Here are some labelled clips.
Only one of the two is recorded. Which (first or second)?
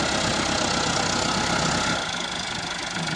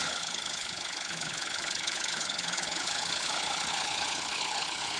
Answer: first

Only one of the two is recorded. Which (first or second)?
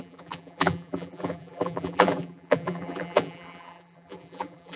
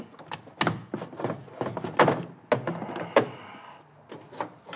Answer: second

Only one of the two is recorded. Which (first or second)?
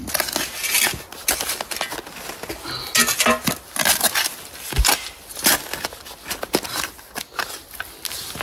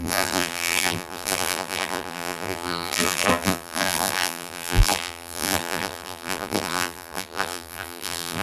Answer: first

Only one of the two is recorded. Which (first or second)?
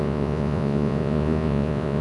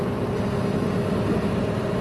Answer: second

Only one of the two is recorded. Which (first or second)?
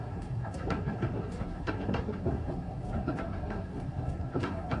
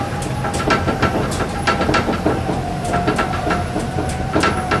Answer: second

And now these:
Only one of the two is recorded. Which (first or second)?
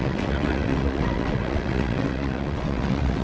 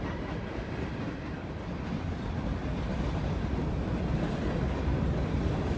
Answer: second